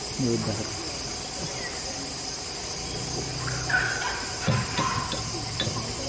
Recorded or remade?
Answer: recorded